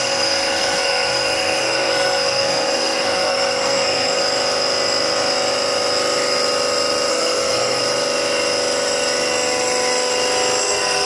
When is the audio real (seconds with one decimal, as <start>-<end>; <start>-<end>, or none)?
4.2-7.1; 7.8-10.6